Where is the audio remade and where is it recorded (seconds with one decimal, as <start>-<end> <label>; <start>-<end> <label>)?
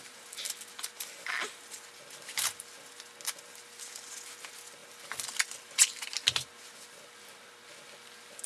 0.0-8.5 recorded